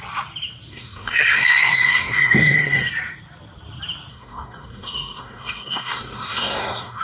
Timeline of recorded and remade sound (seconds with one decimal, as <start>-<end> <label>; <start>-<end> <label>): 0.0-0.7 recorded; 0.7-2.9 remade; 2.9-4.1 recorded; 4.1-7.0 remade